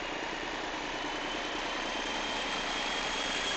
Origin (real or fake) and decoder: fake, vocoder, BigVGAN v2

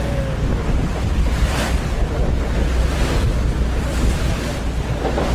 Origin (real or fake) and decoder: fake, vocoder, BigVGAN v2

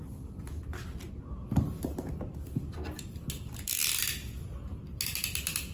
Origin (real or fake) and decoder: real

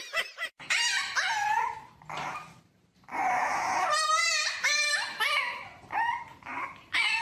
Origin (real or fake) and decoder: fake, vocoder, BigVGAN v2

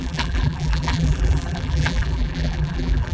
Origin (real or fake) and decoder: fake, vocoder, BigVGAN v2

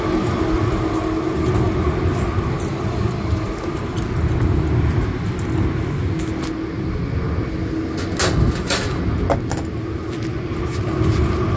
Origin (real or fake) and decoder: real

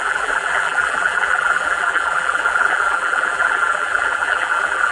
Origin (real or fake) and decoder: fake, vocoder, BigVGAN v2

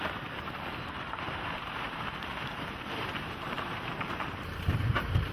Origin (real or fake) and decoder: fake, vocoder, BigVGAN v2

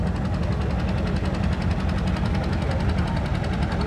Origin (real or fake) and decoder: real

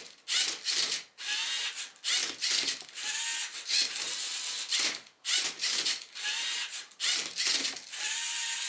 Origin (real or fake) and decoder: real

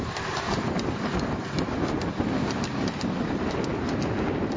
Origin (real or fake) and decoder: real